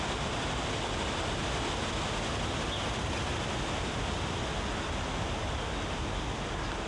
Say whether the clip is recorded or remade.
recorded